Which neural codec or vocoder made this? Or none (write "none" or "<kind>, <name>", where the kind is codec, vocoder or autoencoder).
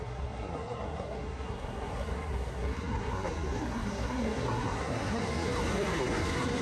codec, SNAC